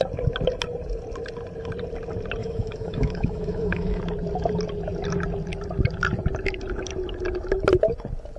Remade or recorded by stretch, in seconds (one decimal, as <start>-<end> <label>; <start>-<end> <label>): 0.0-2.4 recorded; 2.4-4.0 remade; 4.0-8.4 recorded

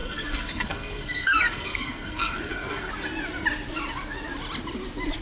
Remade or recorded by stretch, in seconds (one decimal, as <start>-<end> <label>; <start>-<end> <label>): 0.0-2.9 remade; 2.9-5.2 recorded

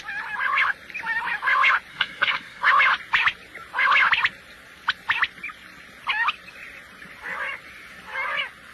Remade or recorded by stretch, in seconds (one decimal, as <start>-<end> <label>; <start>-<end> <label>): 0.0-1.9 recorded; 1.9-2.7 remade; 2.7-8.7 recorded

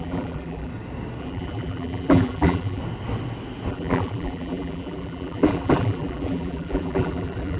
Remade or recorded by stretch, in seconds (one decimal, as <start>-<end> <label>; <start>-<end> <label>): 0.0-0.7 remade; 0.7-1.2 recorded; 1.2-2.8 remade; 2.8-3.7 recorded; 3.7-7.6 remade

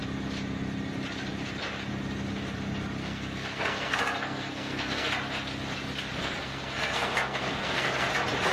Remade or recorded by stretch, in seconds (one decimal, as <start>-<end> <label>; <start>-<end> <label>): 0.0-3.0 recorded; 3.0-5.1 remade; 5.1-6.2 recorded; 6.2-8.1 remade; 8.1-8.5 recorded

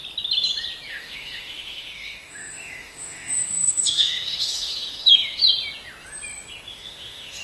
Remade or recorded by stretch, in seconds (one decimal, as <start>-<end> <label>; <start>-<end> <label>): 0.0-0.9 recorded; 0.9-5.4 remade; 5.4-6.7 recorded; 6.7-7.4 remade

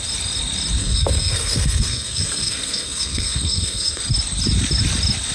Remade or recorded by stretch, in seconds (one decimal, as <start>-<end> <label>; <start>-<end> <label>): 0.0-0.8 recorded; 0.8-4.0 remade; 4.0-5.3 recorded